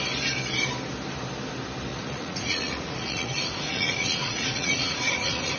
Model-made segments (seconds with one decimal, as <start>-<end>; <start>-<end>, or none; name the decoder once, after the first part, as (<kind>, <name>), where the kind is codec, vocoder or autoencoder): 1.9-5.6 (vocoder, Vocos)